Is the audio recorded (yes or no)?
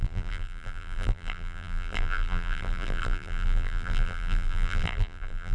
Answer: no